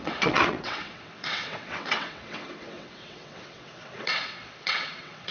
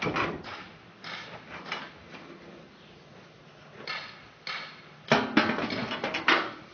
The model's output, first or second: first